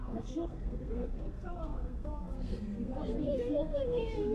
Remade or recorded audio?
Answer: remade